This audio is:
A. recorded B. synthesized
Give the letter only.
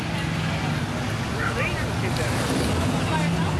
A